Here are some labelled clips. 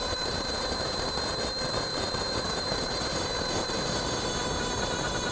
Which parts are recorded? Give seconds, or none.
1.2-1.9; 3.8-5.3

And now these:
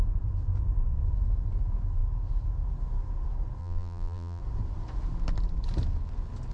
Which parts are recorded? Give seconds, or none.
0.0-3.6; 4.4-6.5

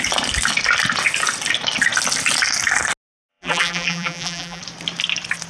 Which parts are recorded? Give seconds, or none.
0.0-3.3; 4.6-5.5

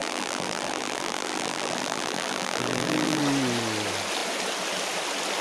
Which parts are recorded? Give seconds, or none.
3.2-5.4

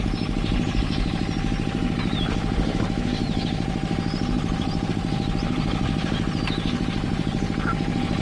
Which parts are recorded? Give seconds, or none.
0.0-8.2

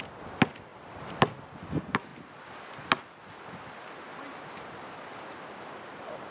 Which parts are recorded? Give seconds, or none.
0.0-0.7; 1.2-2.1